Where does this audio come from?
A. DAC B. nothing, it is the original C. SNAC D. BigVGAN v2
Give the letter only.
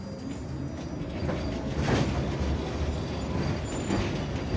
B